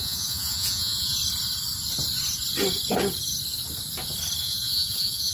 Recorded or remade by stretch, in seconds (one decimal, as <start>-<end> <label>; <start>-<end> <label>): 0.0-1.2 remade; 1.2-4.4 recorded; 4.4-5.3 remade